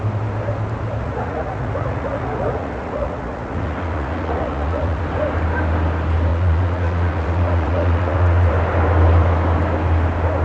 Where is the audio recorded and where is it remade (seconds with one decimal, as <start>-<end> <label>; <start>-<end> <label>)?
0.0-1.0 recorded; 1.0-5.0 remade; 5.0-6.3 recorded; 6.3-8.5 remade; 8.5-10.4 recorded